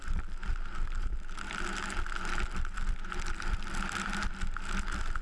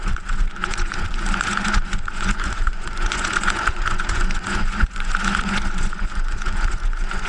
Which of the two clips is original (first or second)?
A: first